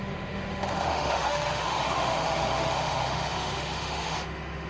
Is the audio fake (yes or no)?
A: yes